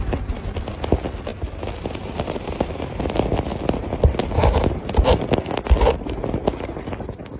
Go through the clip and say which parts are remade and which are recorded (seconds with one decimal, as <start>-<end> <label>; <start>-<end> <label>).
0.0-1.3 remade; 1.3-1.8 recorded; 1.8-6.2 remade; 6.2-7.4 recorded